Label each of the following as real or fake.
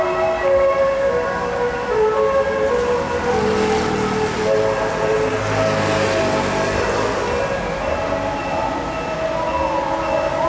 real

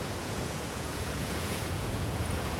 fake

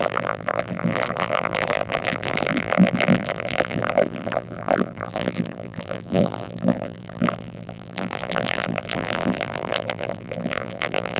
fake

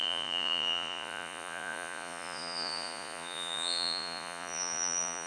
fake